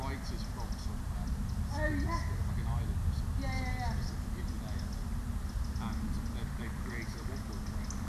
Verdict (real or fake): real